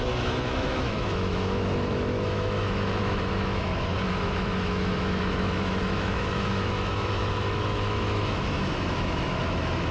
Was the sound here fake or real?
fake